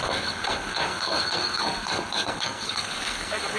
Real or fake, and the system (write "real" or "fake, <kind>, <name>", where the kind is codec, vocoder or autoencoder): fake, codec, SNAC